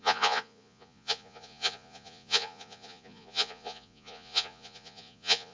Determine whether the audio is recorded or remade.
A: remade